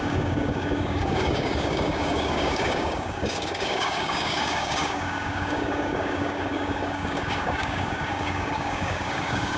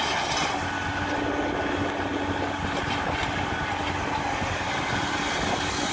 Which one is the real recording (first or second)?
second